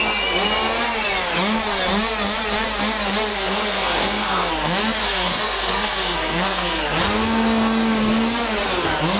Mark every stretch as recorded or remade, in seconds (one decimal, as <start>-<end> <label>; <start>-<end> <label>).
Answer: 0.0-3.3 recorded; 3.3-4.5 remade; 4.5-5.0 recorded; 5.0-6.8 remade; 6.8-9.2 recorded

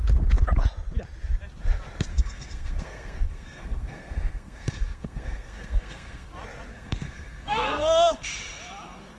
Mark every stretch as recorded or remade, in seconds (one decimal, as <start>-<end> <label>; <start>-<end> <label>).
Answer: 0.0-2.1 recorded; 2.1-6.3 remade; 6.3-6.7 recorded; 6.7-8.2 remade; 8.2-9.2 recorded

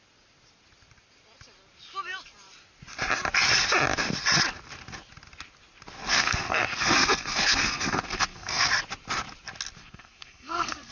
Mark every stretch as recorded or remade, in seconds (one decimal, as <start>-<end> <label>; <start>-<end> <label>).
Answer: 0.0-6.1 recorded; 6.1-8.7 remade; 8.7-9.8 recorded; 9.8-10.9 remade